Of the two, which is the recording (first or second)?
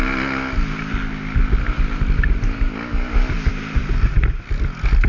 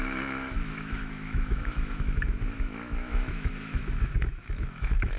first